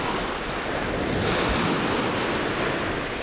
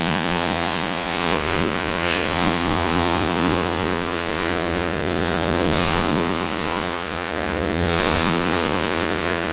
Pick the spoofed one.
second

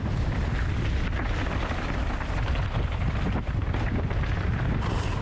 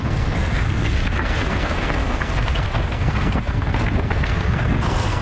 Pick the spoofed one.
second